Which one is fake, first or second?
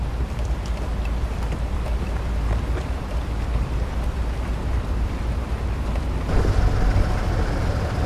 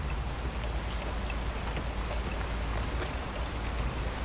first